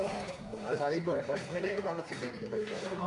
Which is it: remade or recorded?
remade